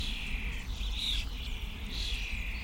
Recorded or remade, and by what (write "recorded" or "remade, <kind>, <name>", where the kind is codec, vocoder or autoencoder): recorded